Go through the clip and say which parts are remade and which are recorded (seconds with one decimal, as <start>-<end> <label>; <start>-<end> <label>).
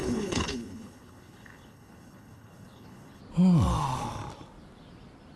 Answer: 0.0-3.2 remade; 3.2-5.4 recorded